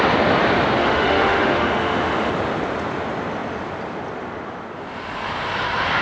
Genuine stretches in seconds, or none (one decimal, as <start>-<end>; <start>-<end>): 0.0-0.8; 2.3-6.0